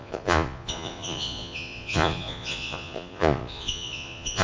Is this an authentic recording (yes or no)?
no